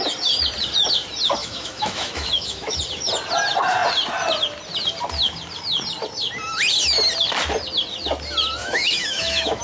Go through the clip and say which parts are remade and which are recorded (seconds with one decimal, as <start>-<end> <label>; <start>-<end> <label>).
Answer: 0.0-1.4 recorded; 1.4-2.8 remade; 2.8-8.6 recorded; 8.6-9.6 remade